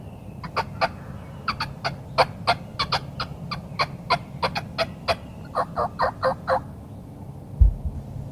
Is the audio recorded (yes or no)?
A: yes